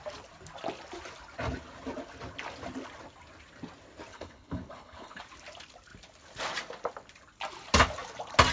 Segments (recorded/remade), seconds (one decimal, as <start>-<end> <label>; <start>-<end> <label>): 0.0-4.1 recorded; 4.1-5.2 remade; 5.2-8.5 recorded